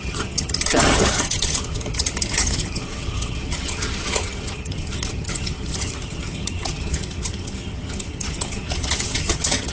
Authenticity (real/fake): fake